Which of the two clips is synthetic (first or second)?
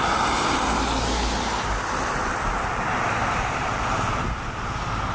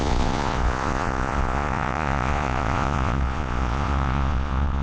second